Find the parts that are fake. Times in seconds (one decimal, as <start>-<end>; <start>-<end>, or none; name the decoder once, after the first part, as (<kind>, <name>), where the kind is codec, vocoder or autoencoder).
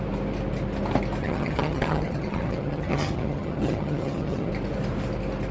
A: 1.2-4.5 (vocoder, HiFi-GAN)